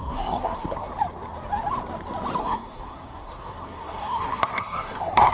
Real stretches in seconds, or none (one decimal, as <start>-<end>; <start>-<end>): 0.9-2.4